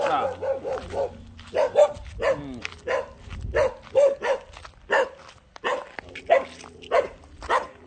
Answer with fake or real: real